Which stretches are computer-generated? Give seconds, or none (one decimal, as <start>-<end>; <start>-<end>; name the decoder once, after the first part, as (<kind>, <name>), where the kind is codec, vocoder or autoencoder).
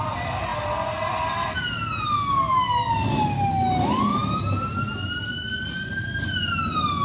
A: none